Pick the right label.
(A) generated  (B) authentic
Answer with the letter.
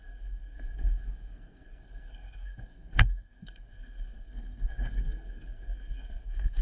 A